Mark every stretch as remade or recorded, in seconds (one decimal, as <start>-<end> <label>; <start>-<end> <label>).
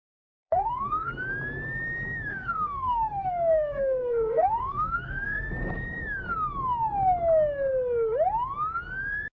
0.0-0.4 recorded; 0.4-1.1 remade; 1.1-2.3 recorded; 2.3-5.5 remade; 5.5-9.3 recorded